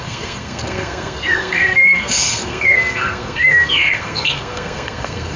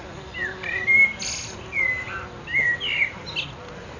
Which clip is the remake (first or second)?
first